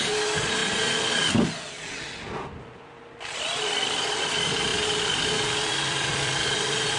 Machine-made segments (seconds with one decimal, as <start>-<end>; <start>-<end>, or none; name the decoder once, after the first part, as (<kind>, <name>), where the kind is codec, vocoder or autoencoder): 4.7-6.1 (vocoder, BigVGAN v2)